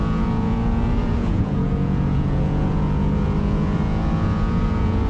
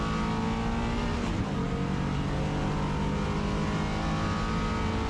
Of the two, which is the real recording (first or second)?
second